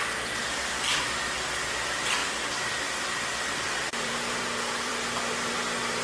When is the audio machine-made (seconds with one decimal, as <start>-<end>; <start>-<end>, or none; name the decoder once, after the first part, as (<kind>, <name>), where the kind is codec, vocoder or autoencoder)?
0.4-1.0 (vocoder, BigVGAN v2); 2.2-5.2